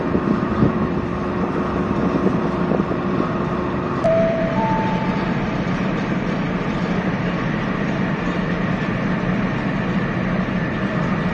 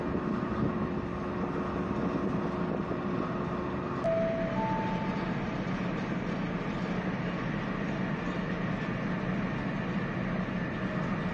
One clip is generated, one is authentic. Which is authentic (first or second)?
second